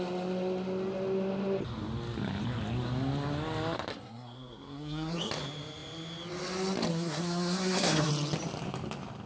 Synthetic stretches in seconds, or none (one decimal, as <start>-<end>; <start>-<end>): 3.9-5.3; 6.9-8.1